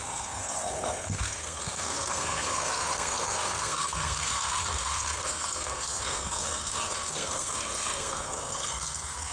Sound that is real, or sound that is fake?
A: fake